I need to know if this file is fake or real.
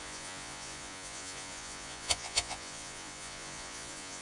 fake